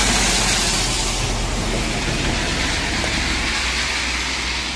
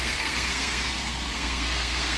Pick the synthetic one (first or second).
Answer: second